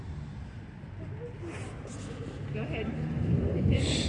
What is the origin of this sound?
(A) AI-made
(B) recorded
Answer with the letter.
A